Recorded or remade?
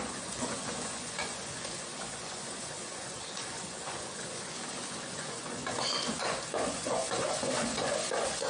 remade